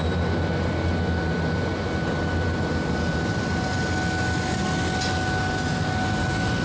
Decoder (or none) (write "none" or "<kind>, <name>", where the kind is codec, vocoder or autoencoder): none